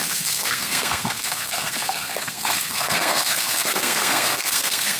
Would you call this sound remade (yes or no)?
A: yes